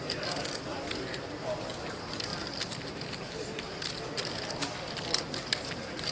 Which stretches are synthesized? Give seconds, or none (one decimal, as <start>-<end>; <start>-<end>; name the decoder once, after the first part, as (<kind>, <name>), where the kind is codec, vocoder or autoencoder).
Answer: 0.0-0.4 (vocoder, BigVGAN v2); 1.7-2.3